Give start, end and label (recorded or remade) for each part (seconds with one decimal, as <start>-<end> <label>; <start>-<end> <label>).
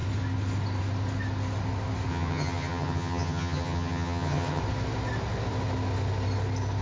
0.0-2.1 recorded; 2.1-4.6 remade; 4.6-6.8 recorded